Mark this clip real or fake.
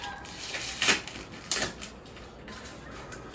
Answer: real